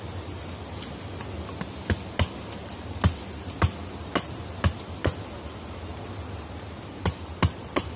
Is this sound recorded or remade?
recorded